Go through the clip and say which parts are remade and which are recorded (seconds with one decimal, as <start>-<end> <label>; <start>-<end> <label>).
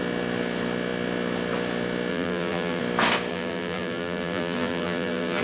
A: 0.0-2.1 recorded; 2.1-2.8 remade; 2.8-3.3 recorded; 3.3-5.4 remade